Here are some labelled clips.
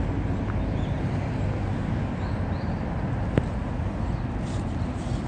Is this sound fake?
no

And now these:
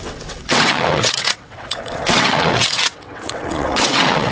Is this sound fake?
yes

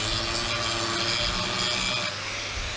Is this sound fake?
no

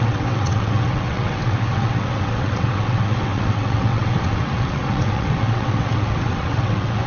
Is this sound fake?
yes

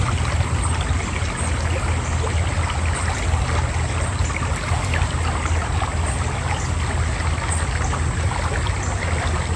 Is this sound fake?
no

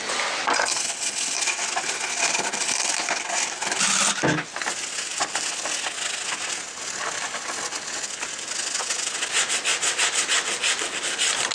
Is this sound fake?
no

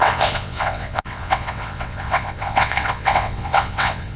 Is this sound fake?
yes